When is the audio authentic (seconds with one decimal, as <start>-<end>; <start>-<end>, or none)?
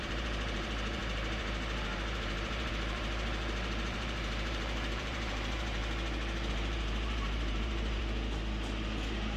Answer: 5.8-6.5; 8.0-9.4